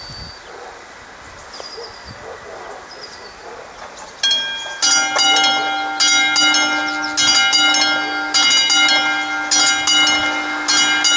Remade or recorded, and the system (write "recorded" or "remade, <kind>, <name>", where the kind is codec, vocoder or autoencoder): recorded